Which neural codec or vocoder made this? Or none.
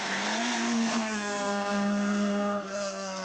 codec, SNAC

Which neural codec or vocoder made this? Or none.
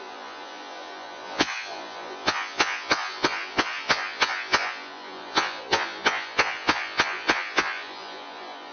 vocoder, Vocos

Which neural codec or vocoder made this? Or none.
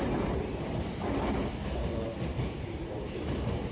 none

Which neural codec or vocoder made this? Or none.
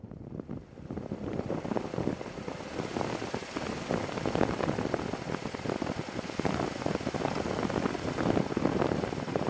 none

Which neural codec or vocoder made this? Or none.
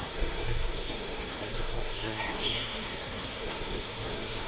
codec, SNAC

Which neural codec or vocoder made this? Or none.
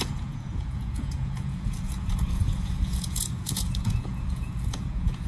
vocoder, Vocos